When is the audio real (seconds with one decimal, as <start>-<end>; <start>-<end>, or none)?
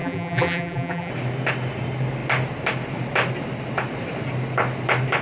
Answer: 1.1-5.2